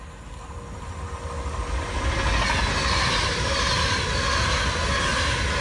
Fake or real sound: real